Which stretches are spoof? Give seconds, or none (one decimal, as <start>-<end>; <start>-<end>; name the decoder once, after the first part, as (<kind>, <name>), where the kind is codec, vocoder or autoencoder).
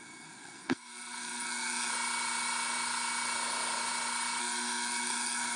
0.0-1.9 (codec, SNAC); 4.4-5.6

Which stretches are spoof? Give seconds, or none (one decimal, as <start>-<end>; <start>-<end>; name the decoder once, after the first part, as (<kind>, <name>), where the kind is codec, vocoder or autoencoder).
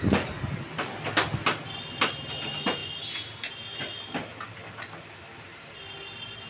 none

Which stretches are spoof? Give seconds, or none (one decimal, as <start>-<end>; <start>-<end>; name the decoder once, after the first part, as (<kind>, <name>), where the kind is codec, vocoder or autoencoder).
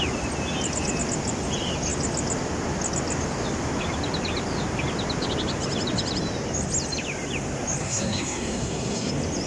7.8-9.1 (codec, SNAC)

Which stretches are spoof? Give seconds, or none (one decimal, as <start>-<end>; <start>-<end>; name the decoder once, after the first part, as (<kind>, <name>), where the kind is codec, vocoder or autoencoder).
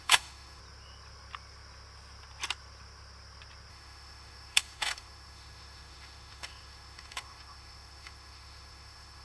0.0-0.6 (autoencoder, DAC-VAE); 3.7-9.2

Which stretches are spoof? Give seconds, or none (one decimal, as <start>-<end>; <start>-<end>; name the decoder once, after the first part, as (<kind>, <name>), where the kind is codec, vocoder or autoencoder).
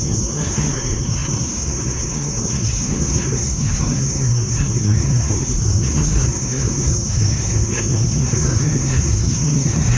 0.0-10.0 (codec, SNAC)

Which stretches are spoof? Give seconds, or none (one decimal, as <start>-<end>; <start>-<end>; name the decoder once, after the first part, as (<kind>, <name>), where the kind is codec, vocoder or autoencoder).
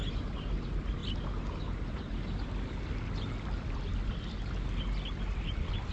none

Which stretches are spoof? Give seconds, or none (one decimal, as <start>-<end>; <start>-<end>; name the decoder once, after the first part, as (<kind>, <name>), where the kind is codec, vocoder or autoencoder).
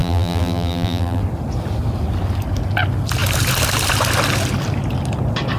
0.0-1.2 (vocoder, BigVGAN v2)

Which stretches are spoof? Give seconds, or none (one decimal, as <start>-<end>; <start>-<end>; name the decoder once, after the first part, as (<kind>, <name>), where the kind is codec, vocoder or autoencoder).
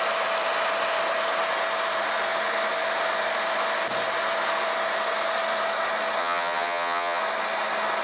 6.2-7.2 (vocoder, HiFi-GAN)